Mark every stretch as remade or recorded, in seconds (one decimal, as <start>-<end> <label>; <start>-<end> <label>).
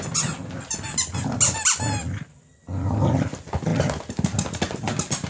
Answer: 0.0-5.3 recorded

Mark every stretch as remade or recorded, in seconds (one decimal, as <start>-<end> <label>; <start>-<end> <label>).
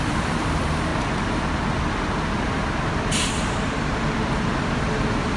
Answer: 0.0-0.9 remade; 0.9-2.8 recorded; 2.8-5.4 remade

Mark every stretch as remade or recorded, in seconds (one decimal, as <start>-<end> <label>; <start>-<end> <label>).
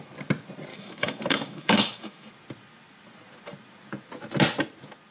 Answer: 0.0-0.7 recorded; 0.7-2.3 remade; 2.3-5.1 recorded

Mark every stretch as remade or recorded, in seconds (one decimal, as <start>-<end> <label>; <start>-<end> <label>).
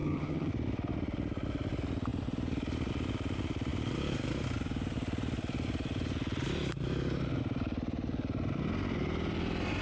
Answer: 0.0-0.5 remade; 0.5-9.8 recorded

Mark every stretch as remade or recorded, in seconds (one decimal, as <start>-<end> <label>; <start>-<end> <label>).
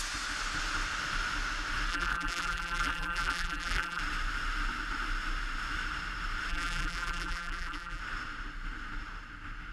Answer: 0.0-1.9 recorded; 1.9-4.0 remade; 4.0-6.5 recorded; 6.5-8.0 remade; 8.0-9.7 recorded